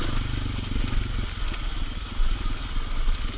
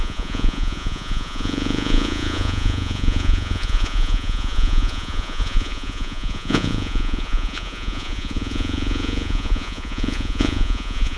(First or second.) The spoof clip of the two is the second